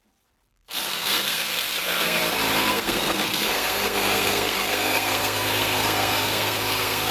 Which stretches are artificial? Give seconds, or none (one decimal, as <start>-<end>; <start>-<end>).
0.5-2.2; 2.6-7.1